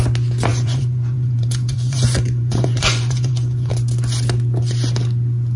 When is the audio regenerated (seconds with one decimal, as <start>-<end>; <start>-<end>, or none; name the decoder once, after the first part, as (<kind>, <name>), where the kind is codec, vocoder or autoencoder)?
0.5-3.7 (vocoder, Vocos)